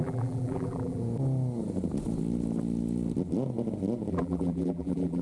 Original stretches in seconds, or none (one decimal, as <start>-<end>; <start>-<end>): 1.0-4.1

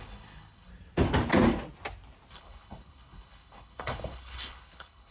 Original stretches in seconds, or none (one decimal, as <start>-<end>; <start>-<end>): 0.7-2.3

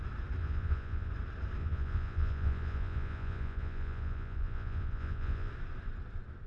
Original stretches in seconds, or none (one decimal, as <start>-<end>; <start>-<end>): 0.0-0.4; 1.1-1.6; 5.5-6.5

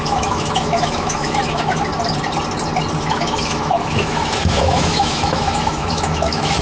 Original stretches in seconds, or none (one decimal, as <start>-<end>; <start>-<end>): 1.9-3.0

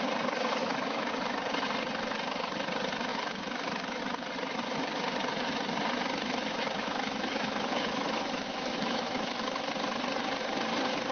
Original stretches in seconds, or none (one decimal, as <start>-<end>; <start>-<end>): 0.0-0.6; 1.1-3.1; 4.0-6.4; 9.7-11.1

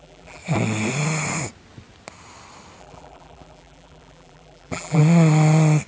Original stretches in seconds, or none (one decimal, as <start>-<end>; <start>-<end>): 0.4-2.8; 5.0-5.9